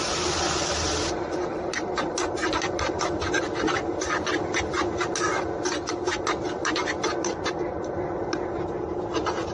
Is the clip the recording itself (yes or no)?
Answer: yes